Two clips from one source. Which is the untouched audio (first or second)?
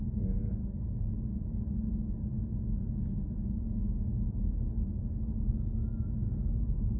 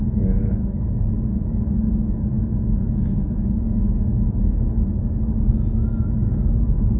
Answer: first